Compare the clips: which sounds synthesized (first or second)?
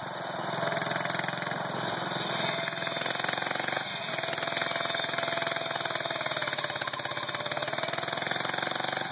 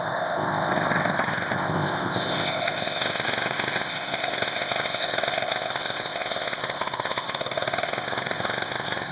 second